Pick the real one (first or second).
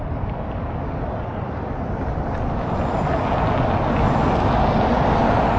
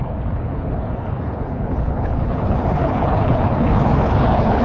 first